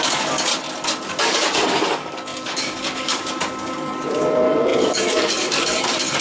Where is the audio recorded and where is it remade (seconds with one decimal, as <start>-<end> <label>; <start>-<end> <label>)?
0.0-0.5 remade; 0.5-1.1 recorded; 1.1-6.2 remade